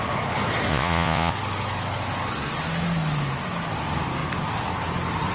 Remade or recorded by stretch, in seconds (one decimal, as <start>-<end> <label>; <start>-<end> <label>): 0.0-0.7 recorded; 0.7-1.3 remade; 1.3-5.3 recorded